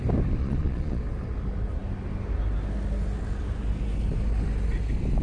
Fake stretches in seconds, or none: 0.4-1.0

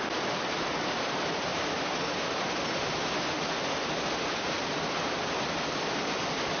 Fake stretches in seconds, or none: 1.5-2.5

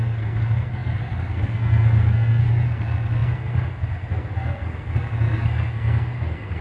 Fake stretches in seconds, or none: 0.0-6.6

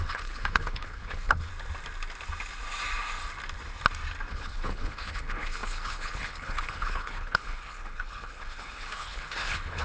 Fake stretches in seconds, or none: 0.0-1.5; 4.3-9.8

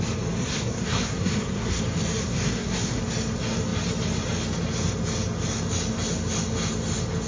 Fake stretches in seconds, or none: 0.4-1.8; 2.2-3.0

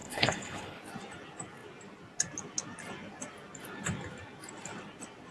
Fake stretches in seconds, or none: 0.0-0.8